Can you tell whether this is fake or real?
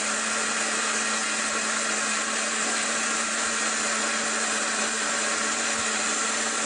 real